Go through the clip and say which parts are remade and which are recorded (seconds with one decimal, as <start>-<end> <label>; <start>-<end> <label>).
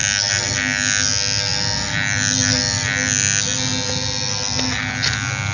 0.0-5.5 recorded